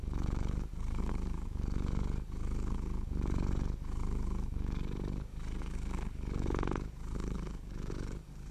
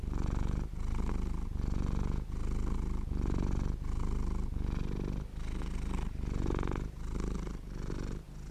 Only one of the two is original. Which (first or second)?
second